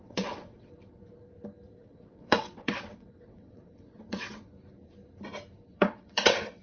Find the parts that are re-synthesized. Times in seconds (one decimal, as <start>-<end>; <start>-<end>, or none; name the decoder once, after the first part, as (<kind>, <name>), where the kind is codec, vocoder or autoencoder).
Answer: 0.0-0.7 (vocoder, WaveNeXt); 1.8-4.4; 5.7-6.6